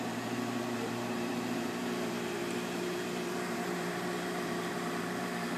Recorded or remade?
remade